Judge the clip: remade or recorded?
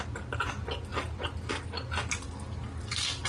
recorded